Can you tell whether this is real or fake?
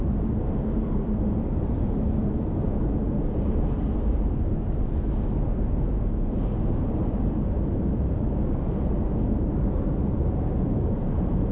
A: fake